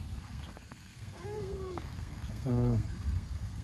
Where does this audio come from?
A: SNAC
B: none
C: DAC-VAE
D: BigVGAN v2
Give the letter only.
A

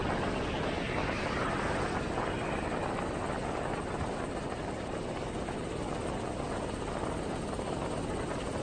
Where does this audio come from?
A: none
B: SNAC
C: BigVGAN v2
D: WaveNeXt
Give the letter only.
A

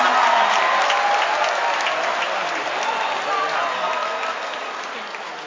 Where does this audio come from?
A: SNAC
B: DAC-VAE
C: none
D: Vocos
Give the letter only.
C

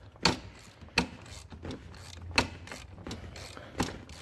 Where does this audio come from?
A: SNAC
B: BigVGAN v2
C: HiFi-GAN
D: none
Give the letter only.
D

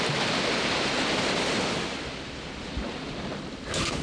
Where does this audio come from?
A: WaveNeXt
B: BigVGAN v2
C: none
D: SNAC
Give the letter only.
C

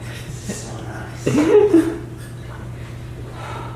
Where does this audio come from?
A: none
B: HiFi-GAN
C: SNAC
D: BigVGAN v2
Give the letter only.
A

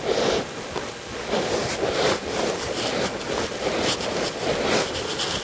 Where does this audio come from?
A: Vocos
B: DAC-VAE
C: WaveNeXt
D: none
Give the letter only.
D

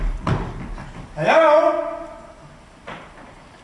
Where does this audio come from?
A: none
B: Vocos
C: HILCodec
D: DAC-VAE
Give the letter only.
A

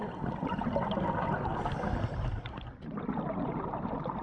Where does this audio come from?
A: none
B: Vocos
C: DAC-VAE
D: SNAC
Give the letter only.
A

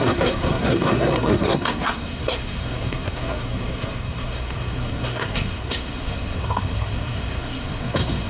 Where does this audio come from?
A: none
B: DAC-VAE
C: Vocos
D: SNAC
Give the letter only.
D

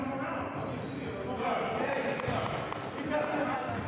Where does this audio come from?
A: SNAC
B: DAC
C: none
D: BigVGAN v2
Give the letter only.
C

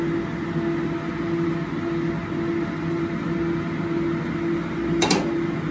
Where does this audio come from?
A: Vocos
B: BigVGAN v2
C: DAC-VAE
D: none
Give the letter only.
D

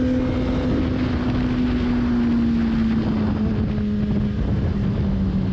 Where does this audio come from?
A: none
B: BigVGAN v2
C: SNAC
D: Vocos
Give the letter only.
A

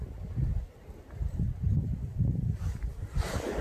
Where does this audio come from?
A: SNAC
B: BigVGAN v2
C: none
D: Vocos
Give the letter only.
C